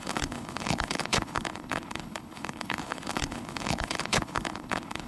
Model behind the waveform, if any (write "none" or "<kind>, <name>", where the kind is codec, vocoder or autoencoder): codec, HILCodec